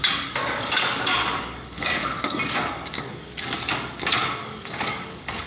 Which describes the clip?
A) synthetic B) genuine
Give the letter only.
A